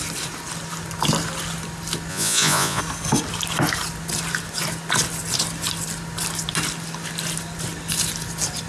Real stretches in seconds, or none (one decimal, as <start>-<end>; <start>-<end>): 0.0-2.1; 2.8-8.7